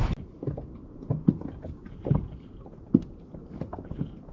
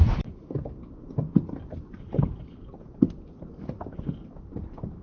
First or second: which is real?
first